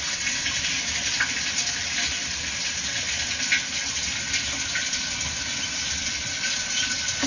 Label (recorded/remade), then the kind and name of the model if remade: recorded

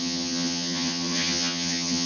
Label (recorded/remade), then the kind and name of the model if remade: remade, vocoder, HiFi-GAN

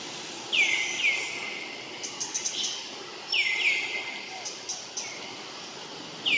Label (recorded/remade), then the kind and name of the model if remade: recorded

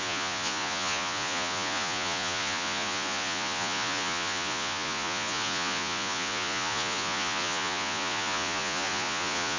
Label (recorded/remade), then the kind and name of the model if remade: remade, vocoder, Vocos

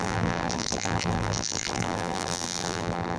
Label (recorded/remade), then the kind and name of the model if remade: remade, vocoder, BigVGAN v2